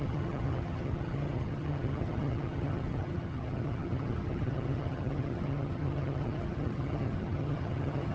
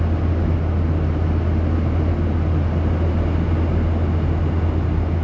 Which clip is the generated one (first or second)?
first